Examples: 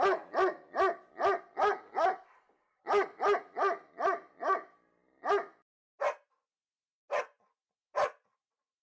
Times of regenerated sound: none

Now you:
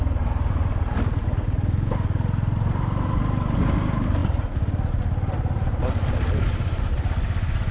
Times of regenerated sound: none

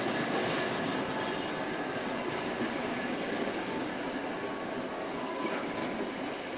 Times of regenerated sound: 0.0-0.9 (codec, DAC); 2.3-3.9; 5.1-5.8

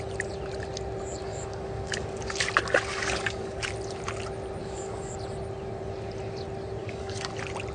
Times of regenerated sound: 1.2-2.4 (codec, DAC); 2.9-3.7; 4.6-5.1; 6.8-7.3

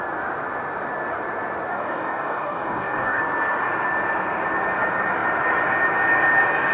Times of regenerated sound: 1.7-3.2 (codec, DAC)